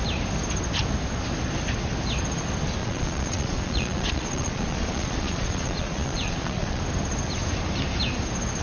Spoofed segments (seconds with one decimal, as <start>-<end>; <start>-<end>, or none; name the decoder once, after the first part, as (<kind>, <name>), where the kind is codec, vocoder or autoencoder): 2.8-6.8 (vocoder, Vocos)